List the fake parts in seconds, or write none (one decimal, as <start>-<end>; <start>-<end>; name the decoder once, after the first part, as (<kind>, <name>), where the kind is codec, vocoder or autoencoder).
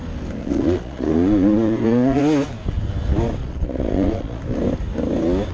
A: 0.4-2.2 (vocoder, Vocos); 3.4-4.4